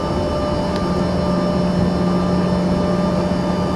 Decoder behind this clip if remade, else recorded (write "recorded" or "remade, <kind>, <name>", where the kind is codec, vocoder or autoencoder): recorded